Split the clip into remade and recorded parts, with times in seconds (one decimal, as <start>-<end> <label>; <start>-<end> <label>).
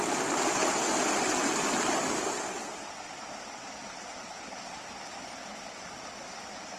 0.0-2.6 recorded; 2.6-4.6 remade; 4.6-6.8 recorded